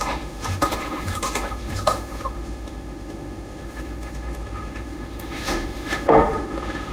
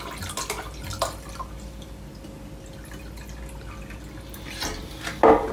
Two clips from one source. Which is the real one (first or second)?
second